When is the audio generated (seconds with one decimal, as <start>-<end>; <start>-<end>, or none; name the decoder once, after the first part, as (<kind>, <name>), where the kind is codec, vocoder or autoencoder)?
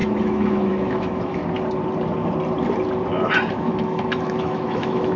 0.0-1.4 (autoencoder, DAC-VAE); 3.5-5.2